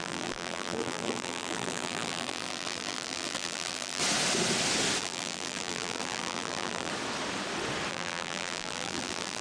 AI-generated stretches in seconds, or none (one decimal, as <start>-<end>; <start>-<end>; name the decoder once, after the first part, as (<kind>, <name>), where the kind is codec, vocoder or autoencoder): 0.0-4.0 (vocoder, BigVGAN v2); 5.0-6.9; 7.9-9.4